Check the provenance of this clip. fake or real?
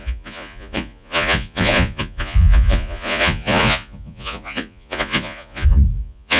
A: fake